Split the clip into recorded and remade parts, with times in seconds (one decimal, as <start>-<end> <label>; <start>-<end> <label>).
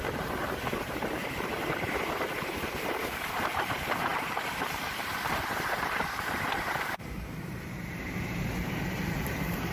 0.0-9.7 remade